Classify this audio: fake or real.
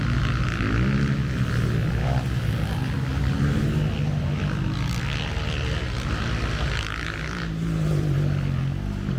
real